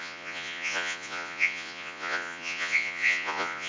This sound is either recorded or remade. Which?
remade